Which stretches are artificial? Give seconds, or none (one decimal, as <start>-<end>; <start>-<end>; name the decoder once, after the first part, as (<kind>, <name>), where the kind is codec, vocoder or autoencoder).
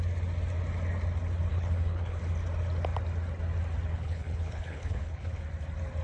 1.5-2.2 (codec, HILCodec); 3.9-5.4